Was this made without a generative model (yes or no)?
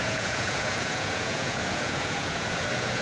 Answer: no